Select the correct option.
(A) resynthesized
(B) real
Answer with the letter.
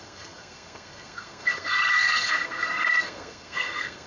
A